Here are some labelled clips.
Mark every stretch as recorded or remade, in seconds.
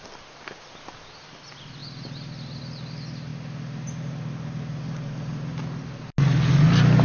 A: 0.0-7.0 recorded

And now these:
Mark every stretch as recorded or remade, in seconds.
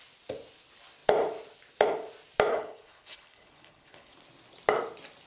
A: 0.0-2.5 recorded; 2.5-4.1 remade; 4.1-5.3 recorded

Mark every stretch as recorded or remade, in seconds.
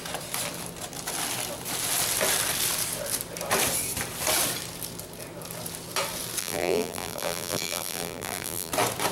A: 0.0-6.4 recorded; 6.4-8.7 remade; 8.7-9.1 recorded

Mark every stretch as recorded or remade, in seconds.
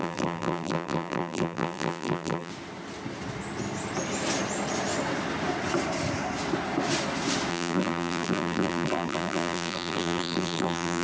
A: 0.0-2.5 remade; 2.5-7.5 recorded; 7.5-11.0 remade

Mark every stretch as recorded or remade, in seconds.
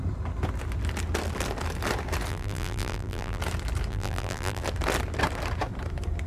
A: 0.0-2.3 recorded; 2.3-3.4 remade; 3.4-3.9 recorded; 3.9-4.6 remade; 4.6-6.3 recorded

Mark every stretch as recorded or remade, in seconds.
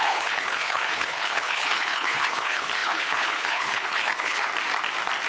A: 0.0-4.5 remade; 4.5-5.3 recorded